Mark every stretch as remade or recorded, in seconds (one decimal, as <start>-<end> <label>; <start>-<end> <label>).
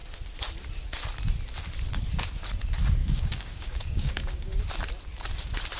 0.0-3.0 recorded; 3.0-4.6 remade; 4.6-5.8 recorded